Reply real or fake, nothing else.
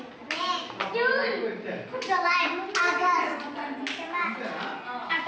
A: real